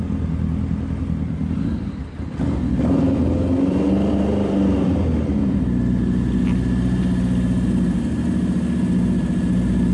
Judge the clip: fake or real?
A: real